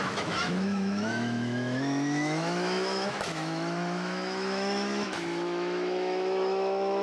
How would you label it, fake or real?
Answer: fake